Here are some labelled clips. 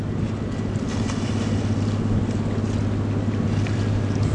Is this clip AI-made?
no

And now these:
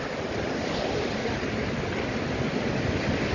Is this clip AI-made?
no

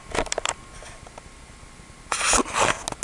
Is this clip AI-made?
no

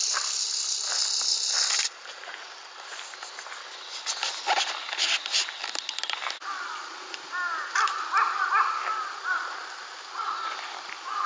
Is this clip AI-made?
no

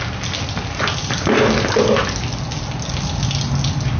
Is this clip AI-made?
no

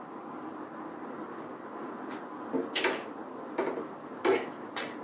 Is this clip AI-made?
no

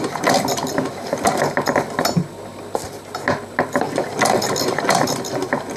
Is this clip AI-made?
no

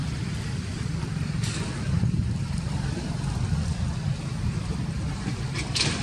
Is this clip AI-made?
yes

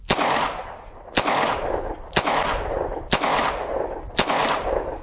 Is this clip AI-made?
no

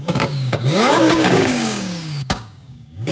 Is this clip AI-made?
yes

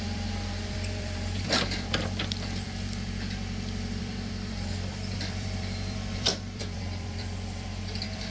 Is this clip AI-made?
yes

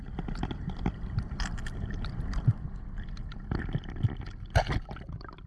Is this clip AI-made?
no